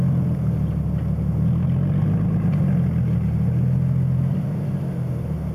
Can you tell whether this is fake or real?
real